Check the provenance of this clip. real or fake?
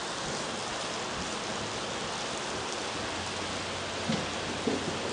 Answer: real